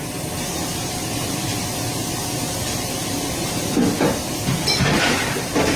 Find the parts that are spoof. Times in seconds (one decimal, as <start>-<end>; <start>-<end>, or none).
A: 0.0-2.0; 2.6-5.8